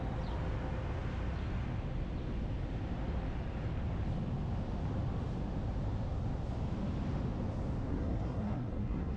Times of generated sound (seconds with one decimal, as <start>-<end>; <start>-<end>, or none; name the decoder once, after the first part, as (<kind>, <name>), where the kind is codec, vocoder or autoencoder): 7.9-9.2 (codec, SNAC)

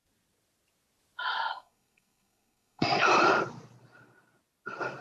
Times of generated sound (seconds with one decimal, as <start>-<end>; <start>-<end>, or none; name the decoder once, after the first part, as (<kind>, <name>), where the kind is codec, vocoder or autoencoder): 1.5-3.0 (codec, SNAC)